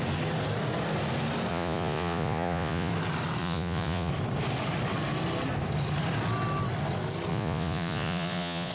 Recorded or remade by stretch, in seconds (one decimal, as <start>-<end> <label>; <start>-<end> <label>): 0.0-1.5 recorded; 1.5-2.9 remade; 2.9-3.4 recorded; 3.4-4.1 remade; 4.1-7.3 recorded; 7.3-8.7 remade